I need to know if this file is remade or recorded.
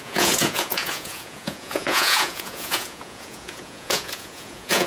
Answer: remade